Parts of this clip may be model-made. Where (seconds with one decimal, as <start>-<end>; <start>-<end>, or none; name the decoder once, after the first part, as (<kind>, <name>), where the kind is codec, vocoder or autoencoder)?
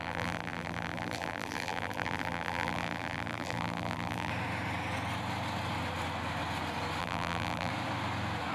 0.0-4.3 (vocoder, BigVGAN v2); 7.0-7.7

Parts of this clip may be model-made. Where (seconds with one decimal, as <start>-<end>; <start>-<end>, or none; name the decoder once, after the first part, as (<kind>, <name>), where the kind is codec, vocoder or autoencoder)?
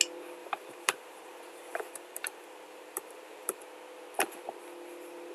0.4-3.6 (vocoder, BigVGAN v2)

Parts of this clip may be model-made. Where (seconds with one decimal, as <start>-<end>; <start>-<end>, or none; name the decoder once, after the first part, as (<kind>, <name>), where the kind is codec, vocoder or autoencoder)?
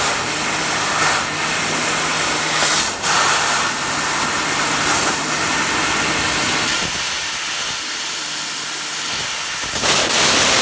none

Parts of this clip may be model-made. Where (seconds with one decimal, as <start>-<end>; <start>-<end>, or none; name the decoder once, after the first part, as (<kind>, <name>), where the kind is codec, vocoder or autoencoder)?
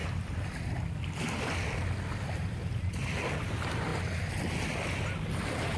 none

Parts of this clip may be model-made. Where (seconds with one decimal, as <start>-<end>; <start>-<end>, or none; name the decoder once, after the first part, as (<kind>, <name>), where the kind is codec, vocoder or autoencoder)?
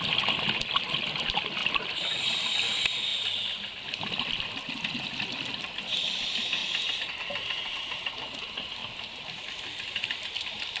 1.6-2.6 (vocoder, BigVGAN v2); 3.1-4.7; 8.8-10.8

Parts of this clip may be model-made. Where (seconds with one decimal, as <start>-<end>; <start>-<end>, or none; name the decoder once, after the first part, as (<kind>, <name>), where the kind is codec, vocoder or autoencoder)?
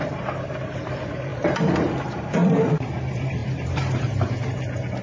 0.0-5.0 (vocoder, BigVGAN v2)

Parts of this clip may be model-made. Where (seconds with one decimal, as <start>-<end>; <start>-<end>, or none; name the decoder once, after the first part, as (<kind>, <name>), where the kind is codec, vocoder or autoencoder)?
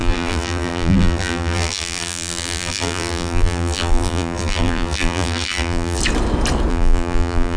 0.0-6.0 (vocoder, BigVGAN v2); 6.7-7.6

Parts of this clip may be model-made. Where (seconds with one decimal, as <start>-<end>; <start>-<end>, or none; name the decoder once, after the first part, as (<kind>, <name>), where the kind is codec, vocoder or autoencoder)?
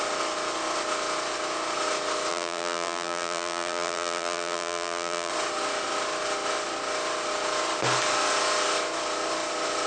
2.3-5.3 (vocoder, BigVGAN v2)